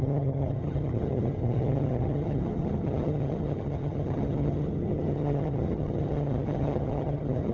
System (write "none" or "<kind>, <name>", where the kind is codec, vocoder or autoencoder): vocoder, HiFi-GAN